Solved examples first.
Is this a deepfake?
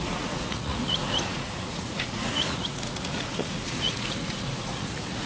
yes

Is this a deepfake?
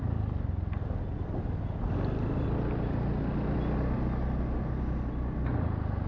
no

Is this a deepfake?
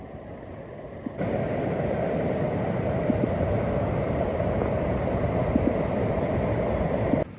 no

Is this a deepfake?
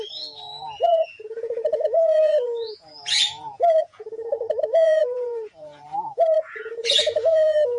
yes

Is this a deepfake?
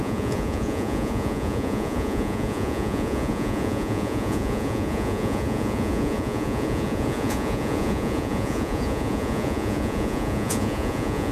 yes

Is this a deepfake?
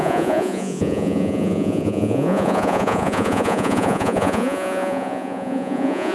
yes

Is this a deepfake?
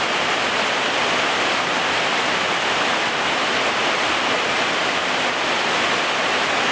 no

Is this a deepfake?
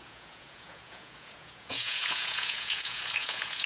yes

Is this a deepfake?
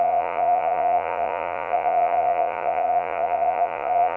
yes